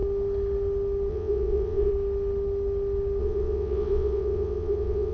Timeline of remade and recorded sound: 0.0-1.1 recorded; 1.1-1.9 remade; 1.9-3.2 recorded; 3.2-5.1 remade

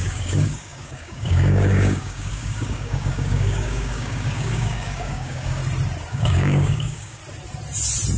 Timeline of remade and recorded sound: 0.0-5.6 remade; 5.6-6.1 recorded; 6.1-7.2 remade; 7.2-8.2 recorded

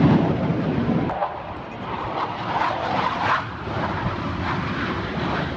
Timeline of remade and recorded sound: 0.0-5.6 recorded

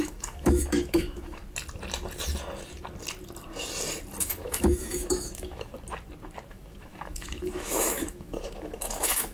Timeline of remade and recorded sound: 0.0-1.4 remade; 1.4-4.2 recorded; 4.2-5.7 remade; 5.7-6.5 recorded; 6.5-9.3 remade

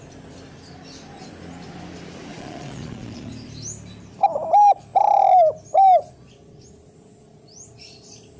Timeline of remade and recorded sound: 0.0-2.3 recorded; 2.3-3.3 remade; 3.3-8.4 recorded